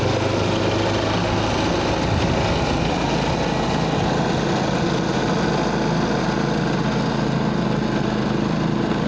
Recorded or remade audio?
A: recorded